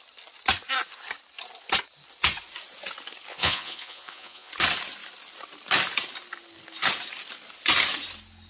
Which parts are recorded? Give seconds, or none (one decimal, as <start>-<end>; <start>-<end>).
0.0-3.3; 4.5-8.5